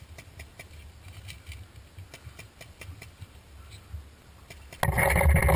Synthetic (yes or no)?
no